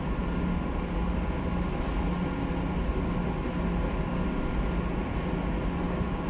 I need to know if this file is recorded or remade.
recorded